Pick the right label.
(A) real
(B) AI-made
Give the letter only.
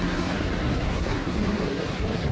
B